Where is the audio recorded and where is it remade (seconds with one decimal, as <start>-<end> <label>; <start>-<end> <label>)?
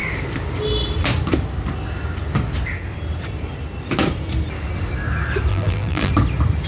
0.0-5.5 recorded; 5.5-6.1 remade; 6.1-6.7 recorded